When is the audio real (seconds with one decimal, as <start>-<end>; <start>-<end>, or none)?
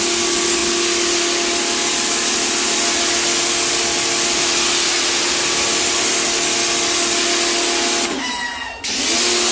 0.0-9.5